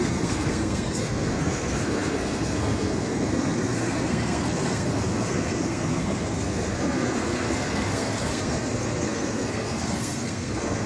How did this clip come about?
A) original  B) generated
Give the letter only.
B